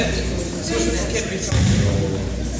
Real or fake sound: real